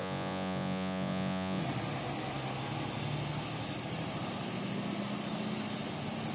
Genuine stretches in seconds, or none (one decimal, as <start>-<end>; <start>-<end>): 1.6-6.3